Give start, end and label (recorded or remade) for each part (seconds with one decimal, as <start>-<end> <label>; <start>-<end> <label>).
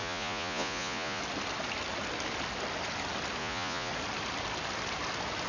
0.0-1.2 remade; 1.2-3.4 recorded; 3.4-3.9 remade; 3.9-5.5 recorded